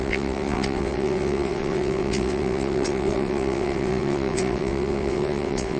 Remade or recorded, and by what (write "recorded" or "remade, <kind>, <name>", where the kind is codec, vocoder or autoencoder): remade, vocoder, WaveNeXt